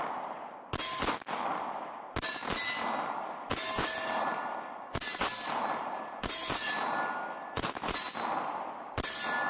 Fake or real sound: real